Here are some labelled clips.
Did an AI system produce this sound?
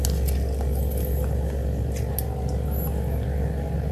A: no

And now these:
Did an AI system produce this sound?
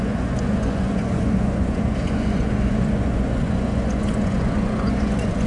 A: yes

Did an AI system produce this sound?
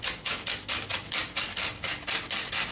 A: no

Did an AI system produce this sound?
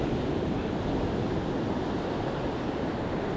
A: no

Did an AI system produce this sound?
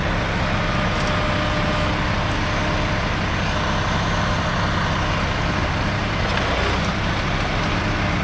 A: no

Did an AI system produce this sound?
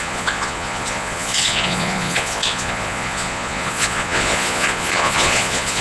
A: yes